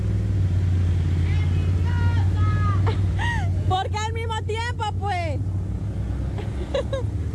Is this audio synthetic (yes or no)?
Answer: no